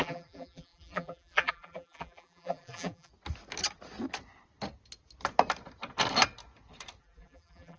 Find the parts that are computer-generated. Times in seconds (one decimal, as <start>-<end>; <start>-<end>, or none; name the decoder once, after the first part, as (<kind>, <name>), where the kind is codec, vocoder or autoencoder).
0.0-3.1 (vocoder, BigVGAN v2); 7.0-7.8